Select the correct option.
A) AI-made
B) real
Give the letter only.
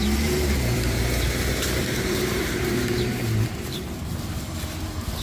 A